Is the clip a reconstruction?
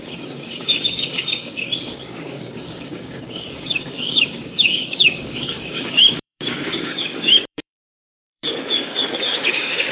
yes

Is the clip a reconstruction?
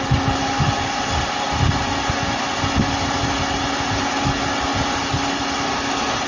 no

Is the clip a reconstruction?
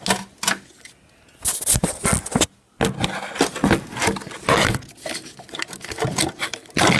no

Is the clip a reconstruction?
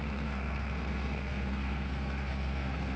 yes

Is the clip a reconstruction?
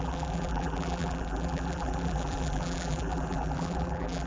yes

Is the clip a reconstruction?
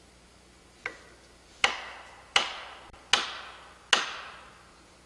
no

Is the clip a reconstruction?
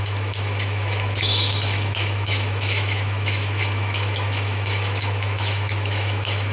yes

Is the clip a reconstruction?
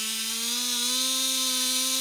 no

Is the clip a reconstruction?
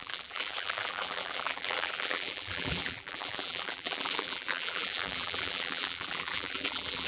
yes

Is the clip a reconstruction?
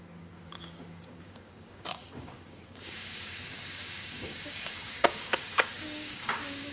yes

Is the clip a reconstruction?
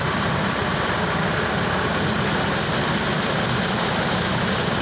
no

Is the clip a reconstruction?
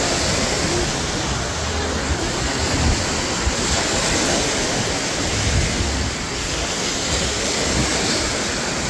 no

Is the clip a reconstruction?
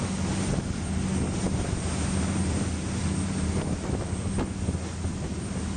no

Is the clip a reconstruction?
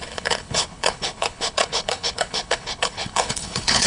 yes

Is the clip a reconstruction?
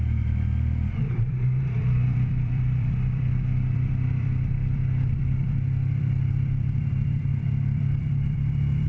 yes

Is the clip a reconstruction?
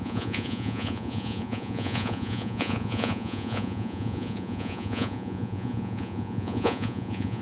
yes